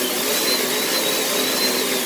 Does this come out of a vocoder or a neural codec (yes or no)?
no